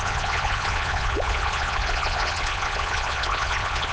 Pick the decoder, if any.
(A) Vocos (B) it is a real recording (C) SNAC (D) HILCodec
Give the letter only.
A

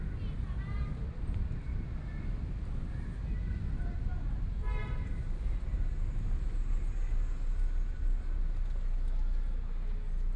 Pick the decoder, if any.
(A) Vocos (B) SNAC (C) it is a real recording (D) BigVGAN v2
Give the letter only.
C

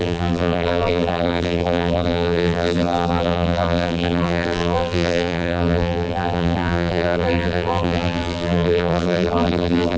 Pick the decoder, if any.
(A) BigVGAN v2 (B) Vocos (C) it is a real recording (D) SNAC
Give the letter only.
A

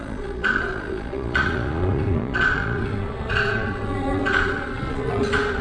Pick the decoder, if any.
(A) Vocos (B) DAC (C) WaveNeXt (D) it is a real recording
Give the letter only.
A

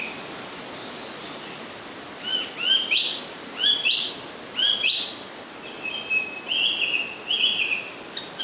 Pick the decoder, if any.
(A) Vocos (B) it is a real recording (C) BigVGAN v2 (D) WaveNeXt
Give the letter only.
B